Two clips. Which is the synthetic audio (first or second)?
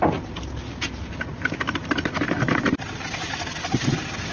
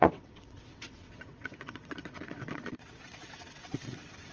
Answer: second